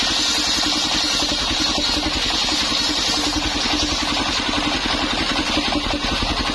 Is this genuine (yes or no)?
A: yes